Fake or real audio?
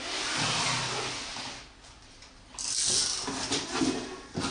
real